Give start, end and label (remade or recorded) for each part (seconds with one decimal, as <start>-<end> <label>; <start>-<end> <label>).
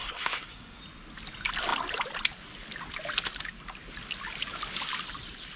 0.0-0.8 remade; 0.8-5.6 recorded